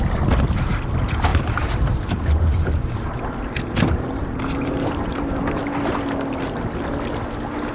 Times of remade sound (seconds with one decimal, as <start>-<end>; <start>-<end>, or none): 1.3-3.2; 4.2-5.6